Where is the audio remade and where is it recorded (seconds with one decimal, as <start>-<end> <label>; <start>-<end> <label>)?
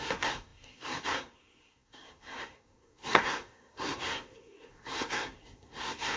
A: 0.0-6.2 remade